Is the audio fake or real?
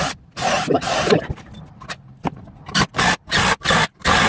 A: fake